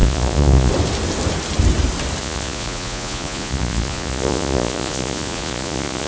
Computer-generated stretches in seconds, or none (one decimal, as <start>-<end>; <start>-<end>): 0.0-0.7; 2.2-6.1